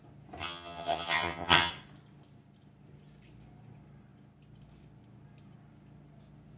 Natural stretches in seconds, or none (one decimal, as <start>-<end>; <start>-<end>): 0.0-0.4; 1.7-6.6